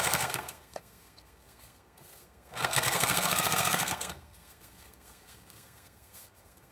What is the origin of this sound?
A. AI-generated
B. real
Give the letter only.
A